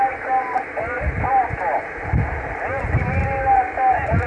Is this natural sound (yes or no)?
yes